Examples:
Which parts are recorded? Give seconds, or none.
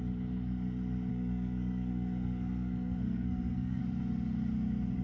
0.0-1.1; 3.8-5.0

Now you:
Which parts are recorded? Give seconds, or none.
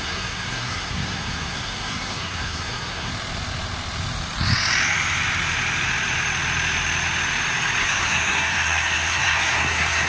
3.1-7.8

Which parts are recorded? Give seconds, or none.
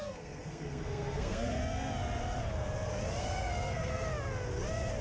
1.6-3.2; 4.1-5.0